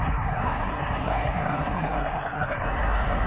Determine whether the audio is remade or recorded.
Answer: remade